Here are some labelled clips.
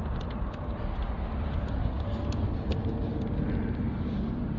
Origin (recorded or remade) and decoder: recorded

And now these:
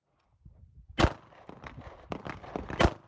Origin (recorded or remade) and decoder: recorded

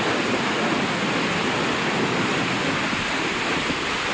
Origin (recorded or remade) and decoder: recorded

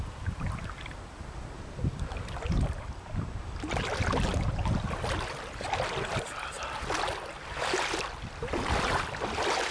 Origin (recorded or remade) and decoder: recorded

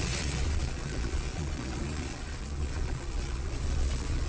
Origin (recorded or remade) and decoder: remade, vocoder, Vocos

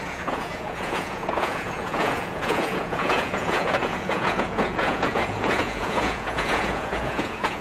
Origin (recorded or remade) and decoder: remade, vocoder, Vocos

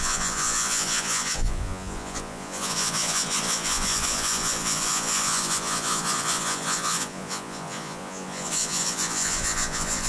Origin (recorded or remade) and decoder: remade, vocoder, Vocos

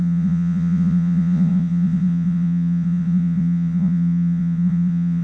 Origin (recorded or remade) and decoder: remade, vocoder, Vocos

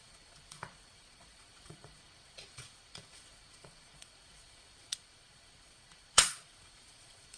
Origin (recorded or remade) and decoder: remade, vocoder, Vocos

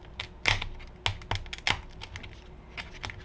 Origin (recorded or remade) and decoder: recorded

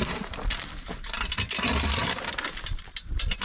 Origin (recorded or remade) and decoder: recorded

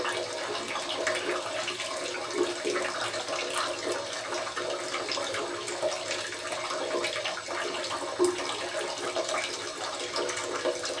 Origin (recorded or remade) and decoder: recorded